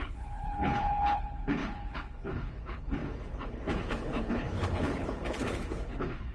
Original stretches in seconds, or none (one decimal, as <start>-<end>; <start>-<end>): none